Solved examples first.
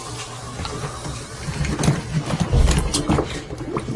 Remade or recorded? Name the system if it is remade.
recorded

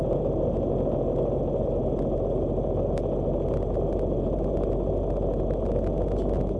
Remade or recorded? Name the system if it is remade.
recorded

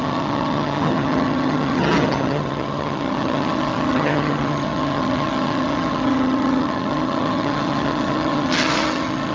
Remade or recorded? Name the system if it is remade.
remade, vocoder, HiFi-GAN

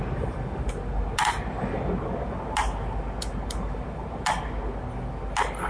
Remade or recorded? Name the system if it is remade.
recorded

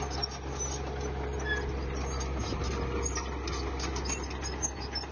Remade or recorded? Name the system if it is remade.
recorded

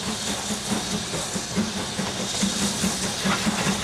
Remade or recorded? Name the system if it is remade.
recorded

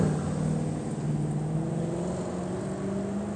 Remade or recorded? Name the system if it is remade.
recorded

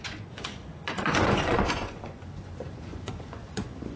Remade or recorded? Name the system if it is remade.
remade, vocoder, Vocos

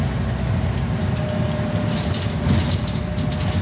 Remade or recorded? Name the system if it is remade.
recorded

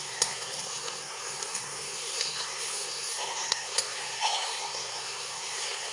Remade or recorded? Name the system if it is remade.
remade, codec, SNAC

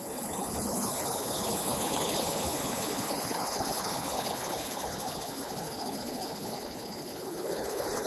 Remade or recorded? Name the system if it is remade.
remade, codec, HILCodec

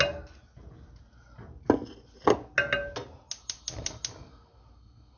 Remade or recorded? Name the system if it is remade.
recorded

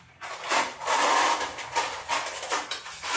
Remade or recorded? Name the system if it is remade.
remade, vocoder, BigVGAN v2